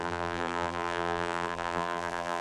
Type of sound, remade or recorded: remade